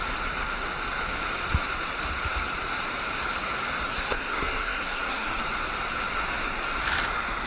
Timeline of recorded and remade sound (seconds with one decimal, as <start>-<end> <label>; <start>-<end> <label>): 0.0-3.9 recorded; 3.9-5.4 remade; 5.4-7.5 recorded